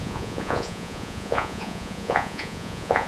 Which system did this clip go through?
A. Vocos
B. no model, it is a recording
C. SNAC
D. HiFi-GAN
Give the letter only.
A